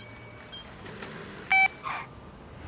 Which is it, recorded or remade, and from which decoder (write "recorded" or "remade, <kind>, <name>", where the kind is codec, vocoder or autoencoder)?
recorded